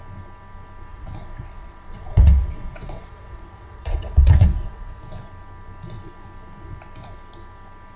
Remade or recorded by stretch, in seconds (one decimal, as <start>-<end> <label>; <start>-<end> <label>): 0.0-0.9 recorded; 0.9-5.0 remade; 5.0-8.0 recorded